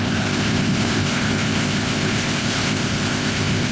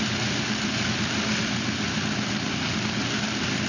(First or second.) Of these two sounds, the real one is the second